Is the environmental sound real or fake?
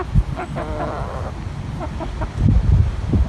real